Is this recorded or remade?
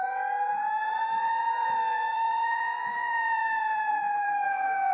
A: remade